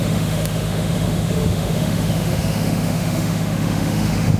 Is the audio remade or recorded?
remade